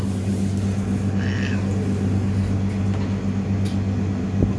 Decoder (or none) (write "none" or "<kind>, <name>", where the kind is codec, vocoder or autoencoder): none